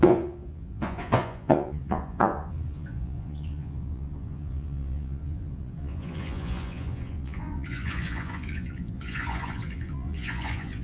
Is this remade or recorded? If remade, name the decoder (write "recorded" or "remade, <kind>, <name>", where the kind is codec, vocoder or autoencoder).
remade, vocoder, Vocos